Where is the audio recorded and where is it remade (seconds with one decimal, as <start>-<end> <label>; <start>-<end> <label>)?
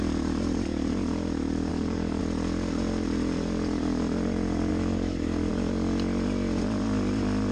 0.0-1.7 recorded; 1.7-2.2 remade; 2.2-4.7 recorded; 4.7-5.5 remade; 5.5-7.5 recorded